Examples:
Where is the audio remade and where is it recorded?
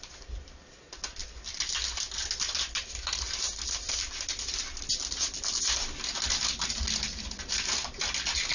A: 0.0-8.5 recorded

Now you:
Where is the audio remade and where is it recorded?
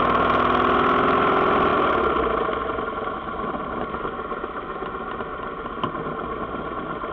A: 0.0-7.1 recorded